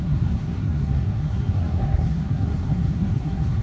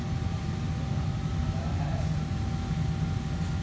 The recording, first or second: second